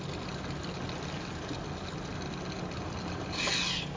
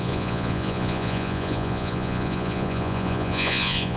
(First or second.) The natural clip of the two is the first